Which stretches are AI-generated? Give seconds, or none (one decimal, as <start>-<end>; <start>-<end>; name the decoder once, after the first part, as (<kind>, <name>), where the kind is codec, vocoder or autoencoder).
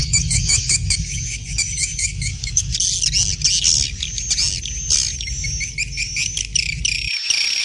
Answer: 0.0-2.7 (autoencoder, DAC-VAE)